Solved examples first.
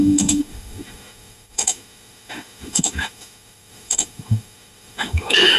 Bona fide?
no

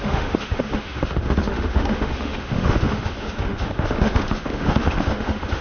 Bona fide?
no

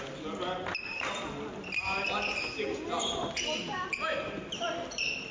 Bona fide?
yes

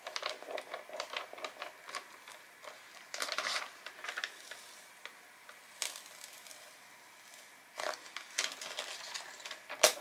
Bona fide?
yes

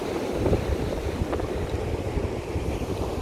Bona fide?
yes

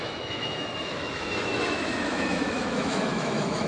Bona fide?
no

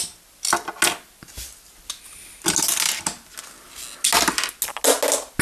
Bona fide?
yes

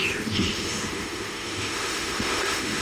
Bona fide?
no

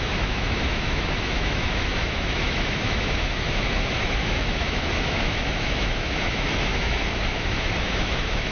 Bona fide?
no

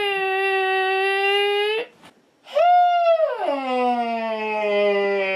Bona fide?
yes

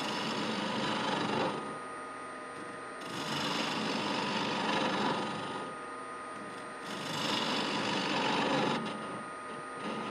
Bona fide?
yes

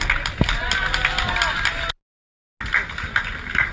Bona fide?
yes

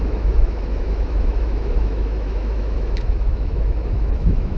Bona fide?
no